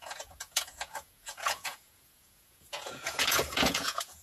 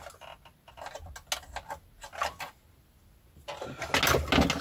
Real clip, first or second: second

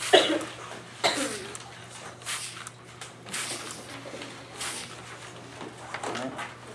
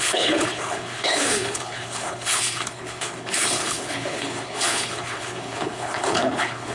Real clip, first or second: first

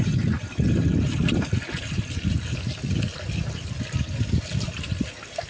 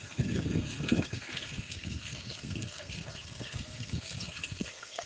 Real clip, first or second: first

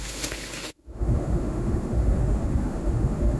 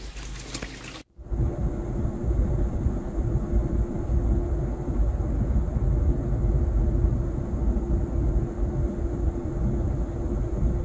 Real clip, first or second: second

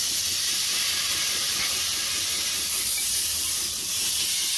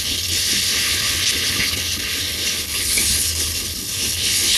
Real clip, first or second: first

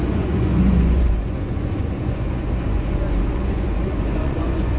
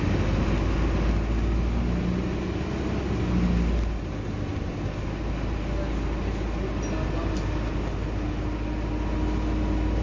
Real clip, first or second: second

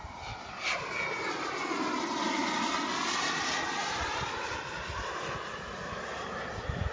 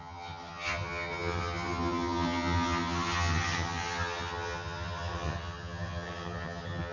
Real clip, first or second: first